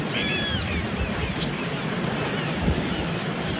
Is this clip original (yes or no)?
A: yes